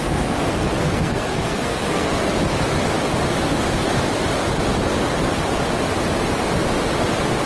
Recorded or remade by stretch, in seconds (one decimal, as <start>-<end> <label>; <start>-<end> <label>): 0.0-2.3 remade; 2.3-7.5 recorded